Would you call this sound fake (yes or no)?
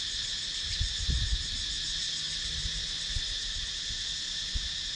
no